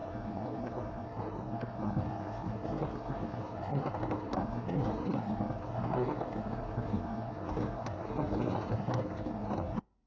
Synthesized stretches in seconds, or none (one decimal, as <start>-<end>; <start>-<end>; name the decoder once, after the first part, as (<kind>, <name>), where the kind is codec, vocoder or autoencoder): 0.0-10.1 (codec, SNAC)